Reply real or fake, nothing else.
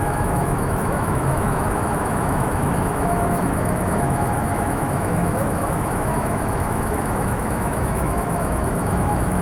fake